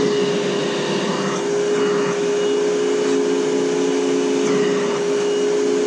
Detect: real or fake real